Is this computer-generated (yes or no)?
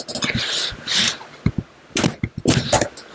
no